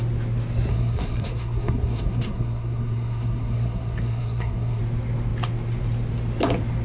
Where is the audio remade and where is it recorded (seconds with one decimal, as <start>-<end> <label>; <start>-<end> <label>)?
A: 0.0-0.7 recorded; 0.7-4.8 remade; 4.8-6.8 recorded